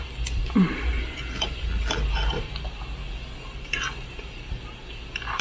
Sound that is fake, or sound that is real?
real